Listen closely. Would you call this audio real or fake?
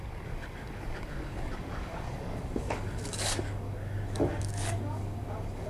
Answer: fake